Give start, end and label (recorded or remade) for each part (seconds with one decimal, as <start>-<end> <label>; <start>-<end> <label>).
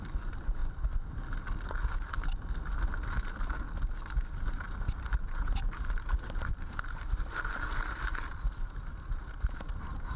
0.0-0.6 remade; 0.6-4.4 recorded; 4.4-10.2 remade